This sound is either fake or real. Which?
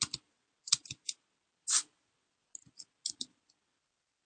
real